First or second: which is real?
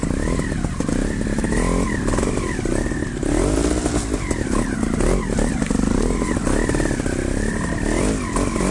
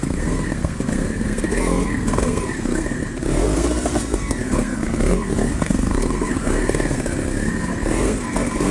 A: first